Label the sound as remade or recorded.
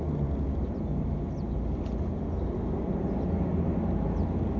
recorded